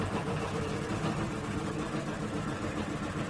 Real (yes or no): no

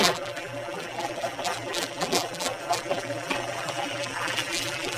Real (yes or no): no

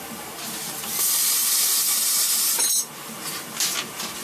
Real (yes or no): yes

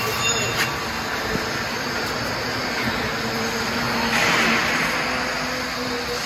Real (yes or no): yes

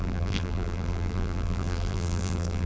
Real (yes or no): no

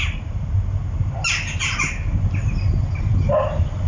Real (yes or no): yes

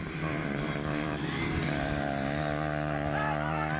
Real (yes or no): no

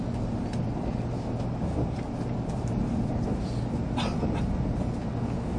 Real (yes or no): yes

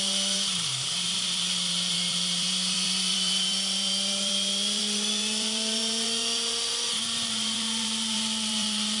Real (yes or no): no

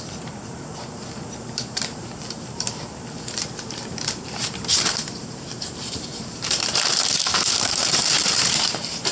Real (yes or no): no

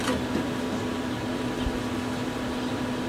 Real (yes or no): yes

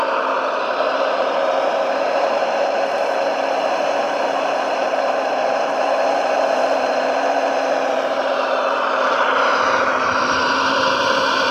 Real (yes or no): no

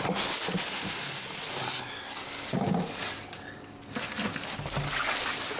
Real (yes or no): yes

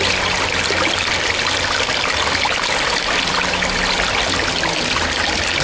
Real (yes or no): yes